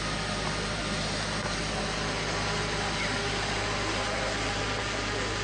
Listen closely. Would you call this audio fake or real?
real